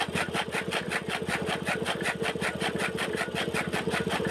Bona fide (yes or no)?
yes